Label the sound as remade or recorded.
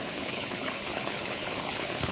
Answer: remade